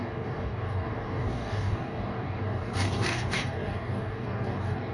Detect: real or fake fake